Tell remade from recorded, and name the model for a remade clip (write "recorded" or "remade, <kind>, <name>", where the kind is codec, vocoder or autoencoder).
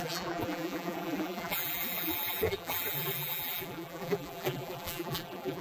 remade, vocoder, BigVGAN v2